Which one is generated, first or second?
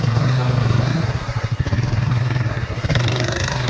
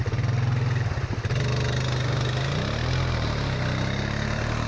first